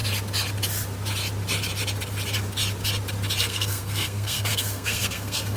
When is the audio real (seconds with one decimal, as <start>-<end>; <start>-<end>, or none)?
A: 0.0-3.4